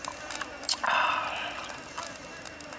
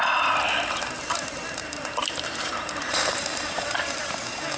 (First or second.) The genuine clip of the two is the first